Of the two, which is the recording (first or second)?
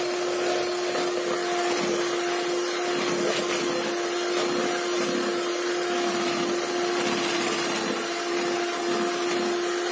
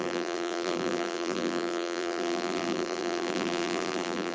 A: first